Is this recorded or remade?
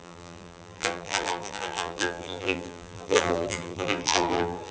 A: remade